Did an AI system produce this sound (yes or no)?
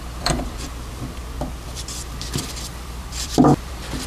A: yes